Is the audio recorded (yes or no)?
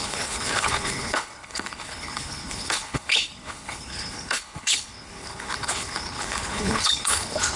no